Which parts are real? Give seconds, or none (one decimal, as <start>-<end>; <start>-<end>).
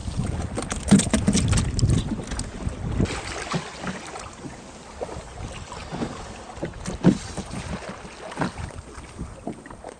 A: 0.0-10.0